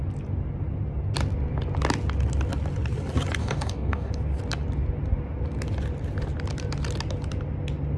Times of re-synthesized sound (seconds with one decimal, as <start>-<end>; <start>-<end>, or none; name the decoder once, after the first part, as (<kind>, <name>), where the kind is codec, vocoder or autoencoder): 3.4-4.1 (codec, DAC)

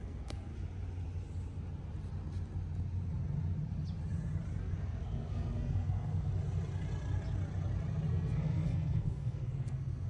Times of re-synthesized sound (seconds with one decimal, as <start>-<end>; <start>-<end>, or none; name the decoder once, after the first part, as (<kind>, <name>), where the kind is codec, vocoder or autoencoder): 0.0-0.5 (codec, SNAC); 4.6-6.3; 8.1-10.1

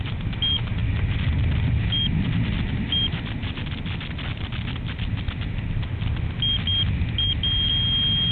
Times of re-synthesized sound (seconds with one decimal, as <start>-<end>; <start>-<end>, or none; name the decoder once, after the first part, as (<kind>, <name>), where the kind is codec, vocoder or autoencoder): none

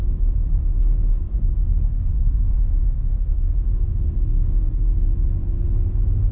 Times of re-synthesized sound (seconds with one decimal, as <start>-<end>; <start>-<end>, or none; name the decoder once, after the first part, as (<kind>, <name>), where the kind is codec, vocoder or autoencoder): 1.3-4.8 (codec, SNAC)

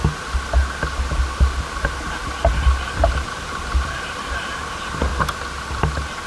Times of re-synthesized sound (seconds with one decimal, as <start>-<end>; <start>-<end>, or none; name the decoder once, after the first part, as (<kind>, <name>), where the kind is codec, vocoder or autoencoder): none

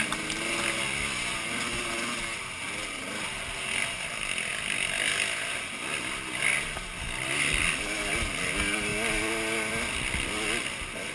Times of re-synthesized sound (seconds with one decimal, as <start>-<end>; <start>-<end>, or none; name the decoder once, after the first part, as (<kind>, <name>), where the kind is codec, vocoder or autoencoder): none